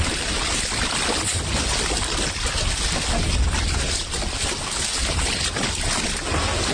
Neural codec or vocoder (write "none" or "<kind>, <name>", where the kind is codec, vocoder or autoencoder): none